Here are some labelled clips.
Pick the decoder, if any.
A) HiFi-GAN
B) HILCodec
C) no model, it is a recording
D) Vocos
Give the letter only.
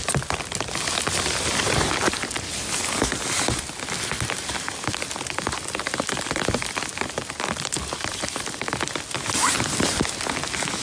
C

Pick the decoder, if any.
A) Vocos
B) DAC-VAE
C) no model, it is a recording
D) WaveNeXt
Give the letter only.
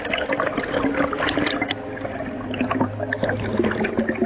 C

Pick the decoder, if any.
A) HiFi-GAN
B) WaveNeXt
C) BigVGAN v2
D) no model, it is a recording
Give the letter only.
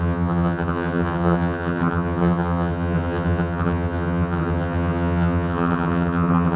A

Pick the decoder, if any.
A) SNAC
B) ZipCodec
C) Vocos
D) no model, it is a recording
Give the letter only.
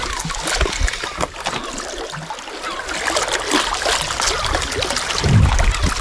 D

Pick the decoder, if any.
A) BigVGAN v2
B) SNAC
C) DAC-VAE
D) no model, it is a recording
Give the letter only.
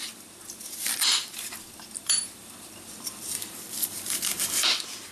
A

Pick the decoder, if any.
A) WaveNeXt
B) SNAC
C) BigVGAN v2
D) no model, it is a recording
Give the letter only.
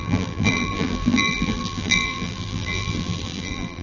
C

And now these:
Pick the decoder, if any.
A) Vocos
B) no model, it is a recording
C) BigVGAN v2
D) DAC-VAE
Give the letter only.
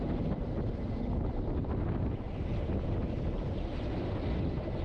B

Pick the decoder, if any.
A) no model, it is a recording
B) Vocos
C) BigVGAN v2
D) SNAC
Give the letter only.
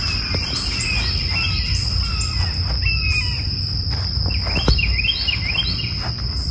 A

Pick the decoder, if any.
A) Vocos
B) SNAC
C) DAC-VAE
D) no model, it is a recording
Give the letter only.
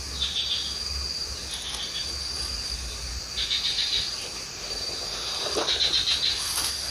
D